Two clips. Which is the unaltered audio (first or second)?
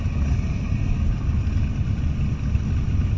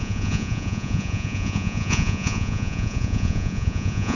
first